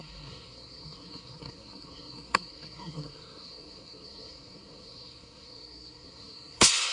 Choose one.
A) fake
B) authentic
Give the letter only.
A